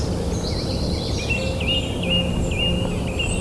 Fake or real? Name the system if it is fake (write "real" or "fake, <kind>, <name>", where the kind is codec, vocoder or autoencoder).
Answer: real